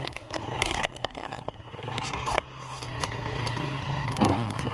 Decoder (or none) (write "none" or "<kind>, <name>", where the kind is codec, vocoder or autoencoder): codec, SNAC